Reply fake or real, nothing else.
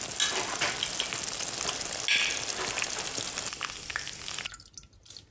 real